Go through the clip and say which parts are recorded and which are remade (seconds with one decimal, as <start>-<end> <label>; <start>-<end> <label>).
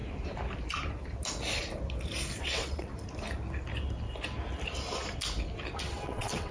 0.0-2.4 recorded; 2.4-2.9 remade; 2.9-5.8 recorded; 5.8-6.5 remade